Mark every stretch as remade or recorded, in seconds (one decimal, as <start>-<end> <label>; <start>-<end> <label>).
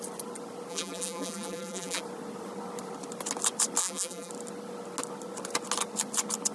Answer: 0.0-0.7 recorded; 0.7-2.0 remade; 2.0-3.8 recorded; 3.8-4.3 remade; 4.3-6.5 recorded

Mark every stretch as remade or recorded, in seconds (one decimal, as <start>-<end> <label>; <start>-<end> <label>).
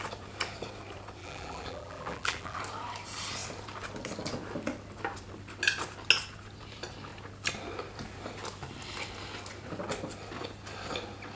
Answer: 0.0-1.2 recorded; 1.2-2.6 remade; 2.6-11.4 recorded